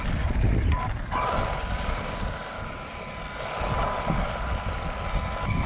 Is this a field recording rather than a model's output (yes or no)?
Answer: yes